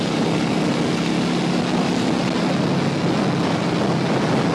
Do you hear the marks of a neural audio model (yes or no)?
no